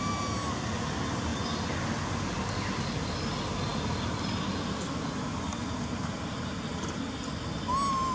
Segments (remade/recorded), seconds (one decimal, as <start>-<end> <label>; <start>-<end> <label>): 0.0-8.1 recorded